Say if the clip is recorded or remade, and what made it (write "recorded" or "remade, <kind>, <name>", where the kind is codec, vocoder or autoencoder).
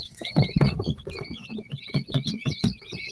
remade, vocoder, WaveNeXt